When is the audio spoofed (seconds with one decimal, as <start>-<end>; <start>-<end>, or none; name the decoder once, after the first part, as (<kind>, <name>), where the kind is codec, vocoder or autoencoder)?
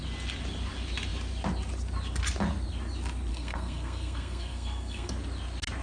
3.3-5.1 (codec, SNAC)